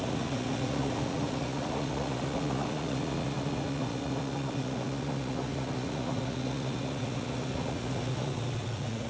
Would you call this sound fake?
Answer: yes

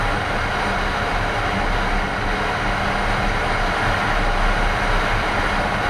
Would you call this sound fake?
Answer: no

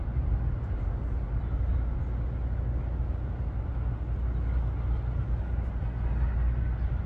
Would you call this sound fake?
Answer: no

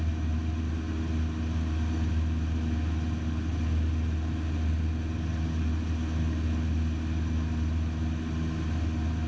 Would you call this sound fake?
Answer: no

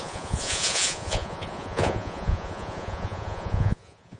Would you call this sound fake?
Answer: yes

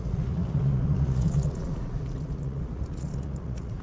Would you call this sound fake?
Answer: yes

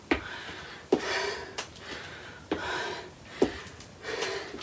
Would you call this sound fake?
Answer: yes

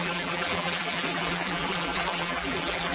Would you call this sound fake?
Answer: yes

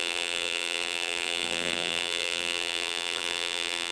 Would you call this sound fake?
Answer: yes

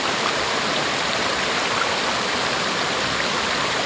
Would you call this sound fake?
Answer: no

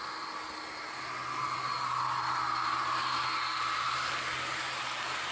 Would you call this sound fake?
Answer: no